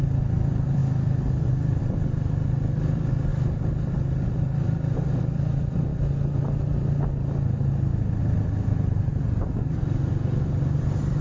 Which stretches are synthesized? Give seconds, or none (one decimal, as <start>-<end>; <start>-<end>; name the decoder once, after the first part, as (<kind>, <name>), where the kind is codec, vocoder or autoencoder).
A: 0.0-3.3 (vocoder, BigVGAN v2); 3.9-5.9; 8.2-11.2